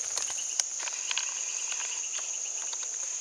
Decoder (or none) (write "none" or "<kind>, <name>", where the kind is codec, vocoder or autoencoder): none